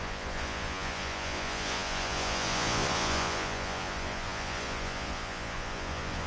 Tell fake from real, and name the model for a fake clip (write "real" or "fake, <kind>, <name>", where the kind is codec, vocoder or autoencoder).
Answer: fake, vocoder, Vocos